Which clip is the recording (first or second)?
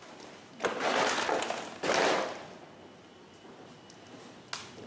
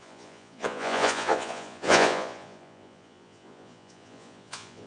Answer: first